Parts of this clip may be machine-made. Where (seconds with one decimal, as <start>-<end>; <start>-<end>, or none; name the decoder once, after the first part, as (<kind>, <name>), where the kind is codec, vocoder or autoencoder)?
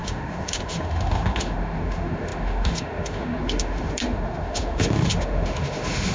0.0-6.1 (autoencoder, DAC-VAE)